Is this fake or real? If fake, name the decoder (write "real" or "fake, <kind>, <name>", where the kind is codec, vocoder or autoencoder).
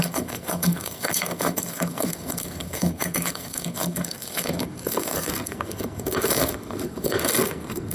fake, codec, SNAC